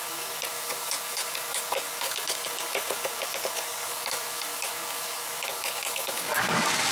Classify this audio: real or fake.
fake